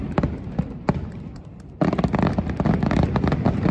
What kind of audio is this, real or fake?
real